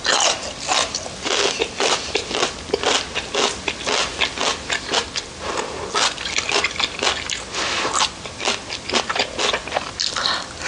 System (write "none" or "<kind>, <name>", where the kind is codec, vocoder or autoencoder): none